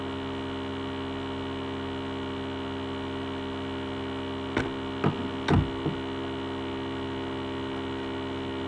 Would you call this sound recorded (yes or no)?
yes